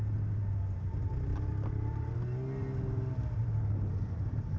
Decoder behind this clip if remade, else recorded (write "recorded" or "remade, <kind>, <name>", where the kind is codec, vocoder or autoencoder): recorded